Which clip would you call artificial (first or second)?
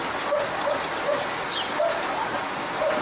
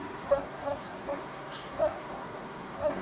second